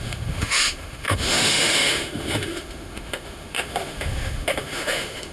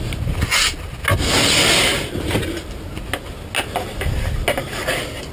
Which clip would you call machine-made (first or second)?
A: first